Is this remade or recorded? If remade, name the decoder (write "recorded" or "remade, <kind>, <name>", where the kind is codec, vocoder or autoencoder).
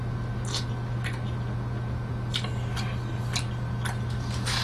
recorded